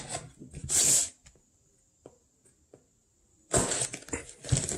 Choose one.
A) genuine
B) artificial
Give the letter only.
A